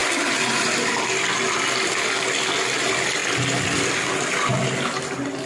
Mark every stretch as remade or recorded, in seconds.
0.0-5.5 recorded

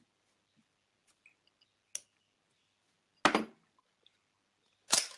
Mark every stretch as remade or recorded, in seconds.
0.0-5.2 recorded

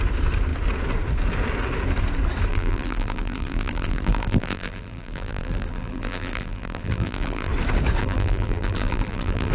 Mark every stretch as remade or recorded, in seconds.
0.0-2.5 recorded; 2.5-7.5 remade; 7.5-8.0 recorded; 8.0-9.5 remade

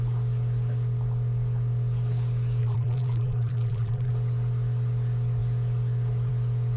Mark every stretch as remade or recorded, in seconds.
0.0-2.6 recorded; 2.6-4.1 remade; 4.1-6.8 recorded